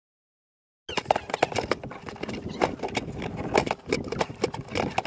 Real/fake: real